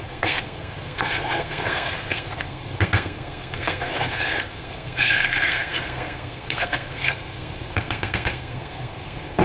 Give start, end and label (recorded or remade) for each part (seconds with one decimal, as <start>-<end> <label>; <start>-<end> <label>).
0.0-9.4 remade